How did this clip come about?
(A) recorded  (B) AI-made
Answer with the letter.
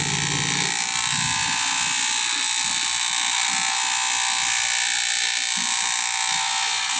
A